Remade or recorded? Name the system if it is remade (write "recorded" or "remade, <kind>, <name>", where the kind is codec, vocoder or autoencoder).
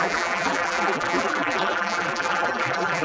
remade, vocoder, BigVGAN v2